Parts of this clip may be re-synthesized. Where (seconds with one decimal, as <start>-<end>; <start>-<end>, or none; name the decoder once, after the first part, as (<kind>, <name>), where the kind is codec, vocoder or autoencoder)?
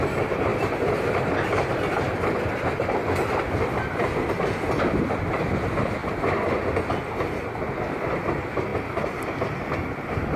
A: none